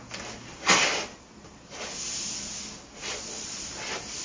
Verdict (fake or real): real